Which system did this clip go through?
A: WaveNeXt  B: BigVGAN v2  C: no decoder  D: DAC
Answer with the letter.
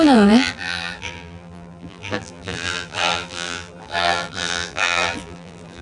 B